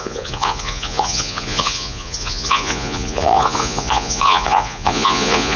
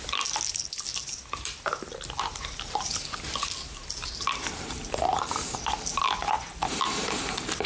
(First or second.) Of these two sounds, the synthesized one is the first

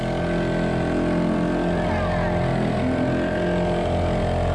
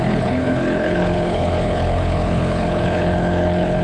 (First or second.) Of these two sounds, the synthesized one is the second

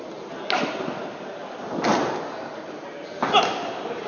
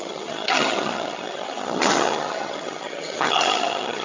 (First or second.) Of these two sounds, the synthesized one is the second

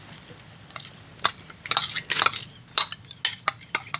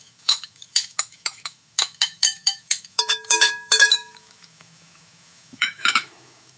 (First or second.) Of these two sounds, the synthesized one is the second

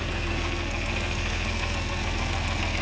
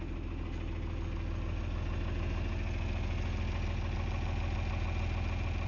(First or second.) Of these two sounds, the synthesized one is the first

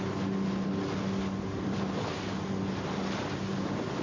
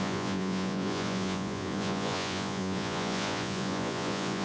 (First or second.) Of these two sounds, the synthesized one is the second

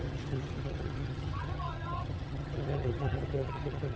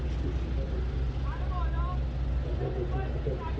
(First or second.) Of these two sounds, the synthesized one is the first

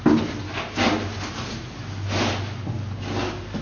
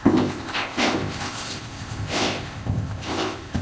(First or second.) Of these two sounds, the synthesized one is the second